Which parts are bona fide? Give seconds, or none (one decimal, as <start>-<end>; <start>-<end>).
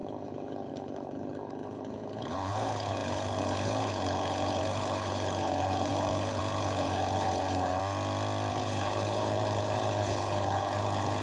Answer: 7.8-8.5